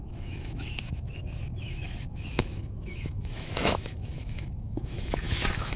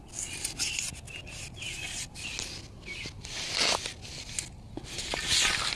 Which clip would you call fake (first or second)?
first